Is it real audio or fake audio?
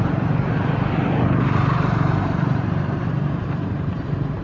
fake